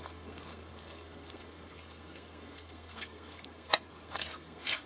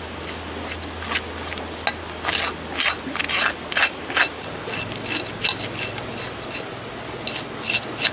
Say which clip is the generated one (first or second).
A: first